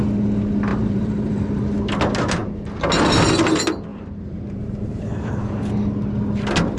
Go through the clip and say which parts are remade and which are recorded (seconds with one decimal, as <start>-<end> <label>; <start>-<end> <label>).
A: 0.0-0.7 recorded; 0.7-1.4 remade; 1.4-3.9 recorded; 3.9-5.6 remade; 5.6-6.8 recorded